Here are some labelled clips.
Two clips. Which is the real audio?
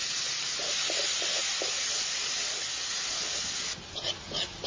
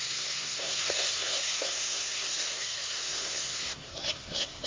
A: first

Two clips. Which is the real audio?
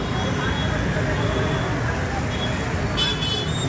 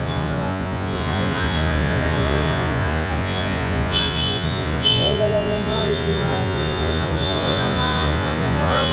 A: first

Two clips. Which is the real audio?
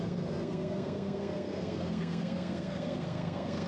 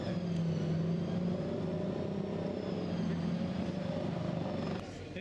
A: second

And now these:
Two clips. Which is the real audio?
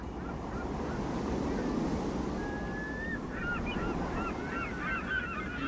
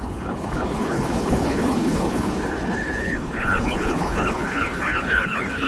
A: first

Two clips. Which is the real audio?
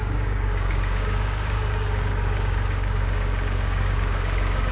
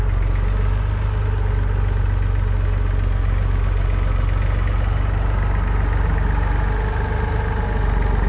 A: second